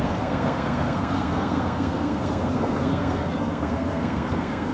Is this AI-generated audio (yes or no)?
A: yes